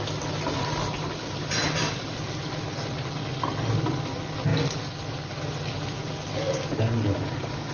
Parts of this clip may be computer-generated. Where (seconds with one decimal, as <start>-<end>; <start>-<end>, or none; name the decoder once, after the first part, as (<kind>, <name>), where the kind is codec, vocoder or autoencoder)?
none